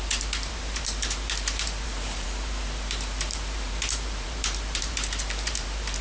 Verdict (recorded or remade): remade